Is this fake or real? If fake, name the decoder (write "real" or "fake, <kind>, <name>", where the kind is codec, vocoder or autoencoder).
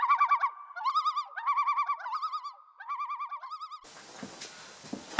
real